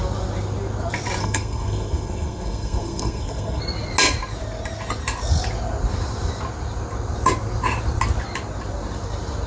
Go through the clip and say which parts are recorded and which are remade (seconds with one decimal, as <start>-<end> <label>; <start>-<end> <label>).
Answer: 0.0-1.2 recorded; 1.2-3.6 remade; 3.6-9.5 recorded